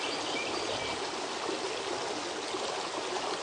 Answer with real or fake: real